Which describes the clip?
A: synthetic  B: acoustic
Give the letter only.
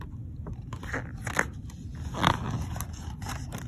B